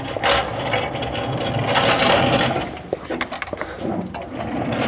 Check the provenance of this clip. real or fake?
real